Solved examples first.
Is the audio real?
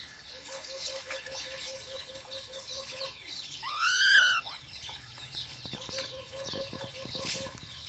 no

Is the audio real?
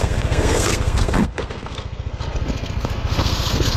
no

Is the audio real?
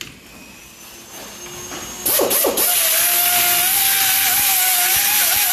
yes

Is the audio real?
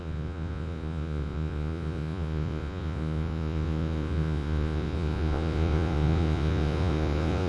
no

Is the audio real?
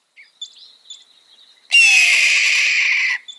yes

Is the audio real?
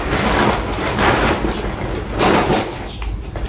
yes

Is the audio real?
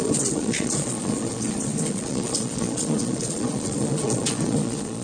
no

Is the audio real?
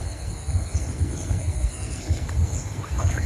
no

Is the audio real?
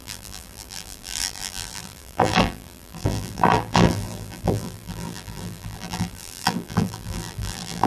no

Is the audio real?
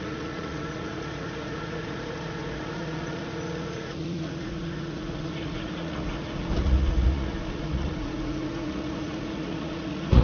no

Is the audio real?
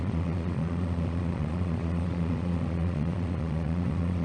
no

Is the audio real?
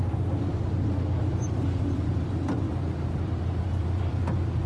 no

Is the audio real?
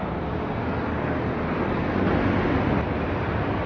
yes